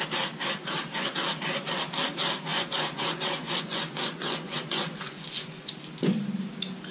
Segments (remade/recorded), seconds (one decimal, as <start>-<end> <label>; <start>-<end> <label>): 0.0-2.5 recorded; 2.5-5.7 remade; 5.7-6.9 recorded